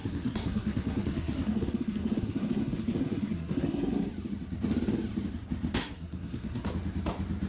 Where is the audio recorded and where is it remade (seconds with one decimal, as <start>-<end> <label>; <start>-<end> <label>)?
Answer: 0.0-4.1 remade; 4.1-5.8 recorded; 5.8-6.7 remade; 6.7-7.5 recorded